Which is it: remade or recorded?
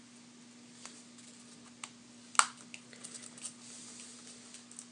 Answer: recorded